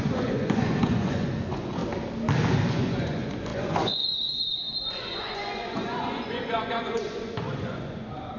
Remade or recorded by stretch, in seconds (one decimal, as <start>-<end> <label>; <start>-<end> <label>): 0.0-1.8 remade; 1.8-2.7 recorded; 2.7-8.4 remade

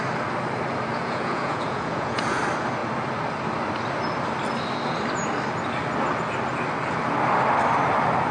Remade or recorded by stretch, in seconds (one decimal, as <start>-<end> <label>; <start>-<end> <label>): 0.0-0.9 recorded; 0.9-2.4 remade; 2.4-8.3 recorded

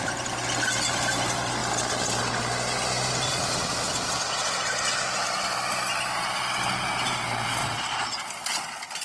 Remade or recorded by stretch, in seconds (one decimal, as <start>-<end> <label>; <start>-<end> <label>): 0.0-3.3 recorded; 3.3-4.7 remade; 4.7-7.6 recorded; 7.6-8.2 remade; 8.2-9.0 recorded

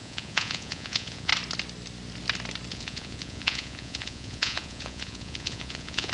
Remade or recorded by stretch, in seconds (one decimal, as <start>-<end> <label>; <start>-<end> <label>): 0.0-1.3 remade; 1.3-2.7 recorded; 2.7-6.1 remade

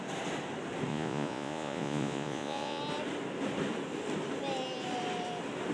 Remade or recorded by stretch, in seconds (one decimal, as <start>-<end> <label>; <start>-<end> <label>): 0.0-0.9 recorded; 0.9-2.8 remade; 2.8-5.7 recorded

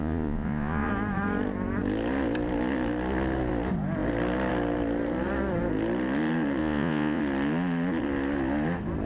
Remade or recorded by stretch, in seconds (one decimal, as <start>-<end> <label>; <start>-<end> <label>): 0.0-0.9 remade; 0.9-6.6 recorded; 6.6-7.2 remade; 7.2-9.1 recorded

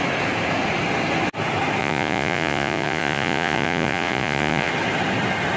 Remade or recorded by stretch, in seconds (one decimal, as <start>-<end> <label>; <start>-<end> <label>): 0.0-1.8 recorded; 1.8-4.7 remade; 4.7-5.6 recorded

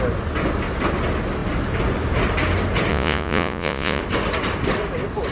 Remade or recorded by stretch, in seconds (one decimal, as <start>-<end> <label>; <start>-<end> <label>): 0.0-2.9 recorded; 2.9-4.0 remade; 4.0-5.3 recorded